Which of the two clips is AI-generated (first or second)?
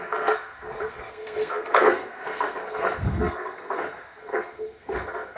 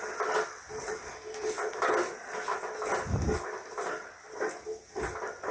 first